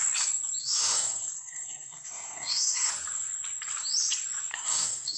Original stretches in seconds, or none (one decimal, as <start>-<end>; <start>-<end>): 0.0-0.6; 2.9-4.5